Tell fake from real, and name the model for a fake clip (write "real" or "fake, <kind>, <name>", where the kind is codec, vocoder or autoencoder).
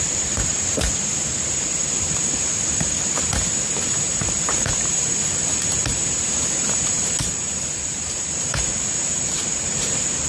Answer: fake, vocoder, BigVGAN v2